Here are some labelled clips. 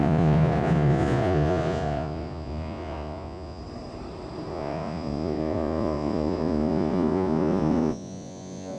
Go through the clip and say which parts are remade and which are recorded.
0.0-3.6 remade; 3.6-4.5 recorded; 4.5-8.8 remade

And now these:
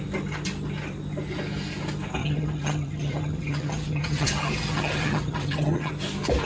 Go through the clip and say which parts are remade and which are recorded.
0.0-2.2 recorded; 2.2-5.9 remade; 5.9-6.5 recorded

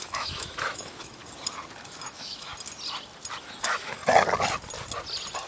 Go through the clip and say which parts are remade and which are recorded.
0.0-1.2 remade; 1.2-2.1 recorded; 2.1-2.5 remade; 2.5-3.4 recorded; 3.4-4.0 remade; 4.0-5.5 recorded

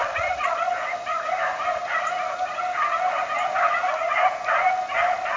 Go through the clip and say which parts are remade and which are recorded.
0.0-0.7 remade; 0.7-5.4 recorded

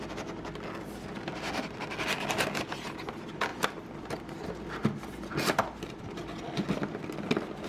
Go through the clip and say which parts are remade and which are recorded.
0.0-3.5 recorded; 3.5-5.3 remade; 5.3-7.7 recorded

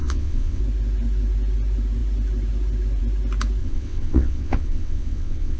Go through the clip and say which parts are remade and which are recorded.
0.0-0.6 remade; 0.6-3.6 recorded; 3.6-5.6 remade

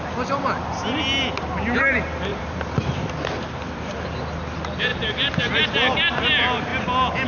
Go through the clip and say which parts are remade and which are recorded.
0.0-2.3 recorded; 2.3-3.9 remade; 3.9-4.9 recorded; 4.9-5.7 remade; 5.7-7.3 recorded